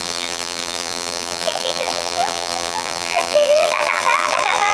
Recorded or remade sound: remade